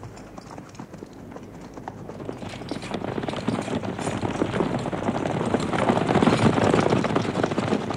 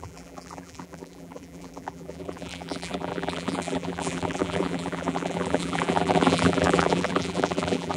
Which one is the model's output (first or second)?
second